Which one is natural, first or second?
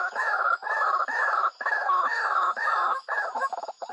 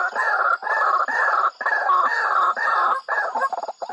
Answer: second